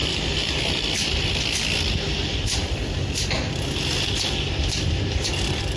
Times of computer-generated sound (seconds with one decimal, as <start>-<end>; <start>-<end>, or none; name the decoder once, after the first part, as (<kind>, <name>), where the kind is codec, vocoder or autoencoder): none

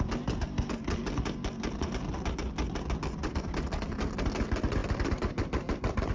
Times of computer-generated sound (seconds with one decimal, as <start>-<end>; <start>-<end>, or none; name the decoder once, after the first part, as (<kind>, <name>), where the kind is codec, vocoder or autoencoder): none

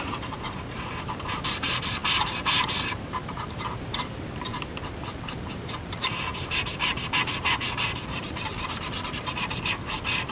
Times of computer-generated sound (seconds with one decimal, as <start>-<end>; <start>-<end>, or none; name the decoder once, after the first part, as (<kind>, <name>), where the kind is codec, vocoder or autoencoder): 0.0-10.3 (vocoder, BigVGAN v2)

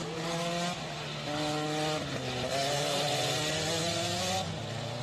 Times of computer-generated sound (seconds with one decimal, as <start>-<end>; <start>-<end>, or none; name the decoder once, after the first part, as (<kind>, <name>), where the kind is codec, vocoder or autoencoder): 3.9-4.6 (vocoder, BigVGAN v2)